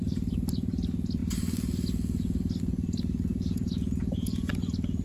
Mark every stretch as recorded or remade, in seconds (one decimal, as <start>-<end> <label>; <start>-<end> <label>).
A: 0.0-3.3 recorded; 3.3-4.5 remade; 4.5-5.0 recorded